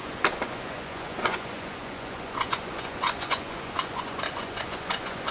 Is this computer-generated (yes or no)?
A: yes